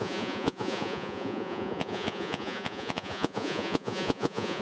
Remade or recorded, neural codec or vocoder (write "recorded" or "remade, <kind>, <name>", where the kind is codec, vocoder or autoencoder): remade, vocoder, Vocos